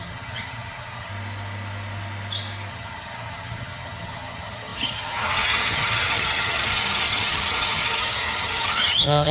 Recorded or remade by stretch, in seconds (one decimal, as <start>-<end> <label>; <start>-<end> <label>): 0.0-1.1 remade; 1.1-2.7 recorded; 2.7-9.3 remade